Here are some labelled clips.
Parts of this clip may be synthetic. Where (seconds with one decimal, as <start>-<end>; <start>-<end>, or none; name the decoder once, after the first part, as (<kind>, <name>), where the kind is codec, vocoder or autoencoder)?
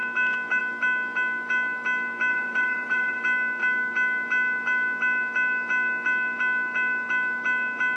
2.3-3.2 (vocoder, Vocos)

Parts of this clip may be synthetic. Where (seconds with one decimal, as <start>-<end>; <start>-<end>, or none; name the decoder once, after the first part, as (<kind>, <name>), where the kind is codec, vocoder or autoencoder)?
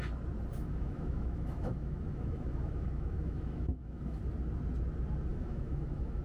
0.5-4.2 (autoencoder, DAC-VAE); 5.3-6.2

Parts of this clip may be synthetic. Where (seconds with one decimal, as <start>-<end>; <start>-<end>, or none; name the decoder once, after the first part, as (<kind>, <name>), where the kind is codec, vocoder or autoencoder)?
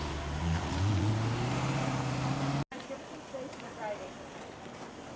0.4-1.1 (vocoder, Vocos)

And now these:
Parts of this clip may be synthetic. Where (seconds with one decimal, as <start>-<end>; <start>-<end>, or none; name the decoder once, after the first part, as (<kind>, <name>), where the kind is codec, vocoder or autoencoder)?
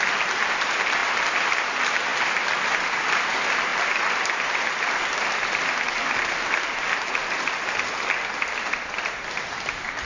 none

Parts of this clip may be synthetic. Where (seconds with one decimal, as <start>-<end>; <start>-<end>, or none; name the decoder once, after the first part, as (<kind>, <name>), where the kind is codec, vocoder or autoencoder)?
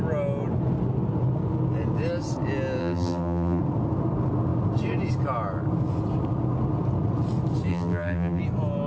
2.8-3.6 (vocoder, BigVGAN v2); 7.7-8.4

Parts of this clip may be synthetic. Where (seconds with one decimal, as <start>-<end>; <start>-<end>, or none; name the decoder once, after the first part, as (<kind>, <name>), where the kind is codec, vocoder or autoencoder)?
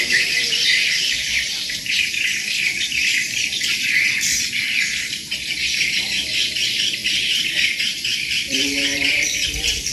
0.0-9.9 (vocoder, BigVGAN v2)